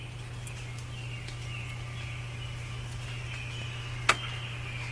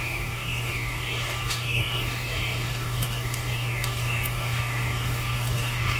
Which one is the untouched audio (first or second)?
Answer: first